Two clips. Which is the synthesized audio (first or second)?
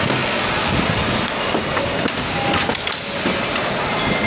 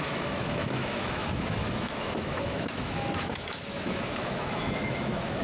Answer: second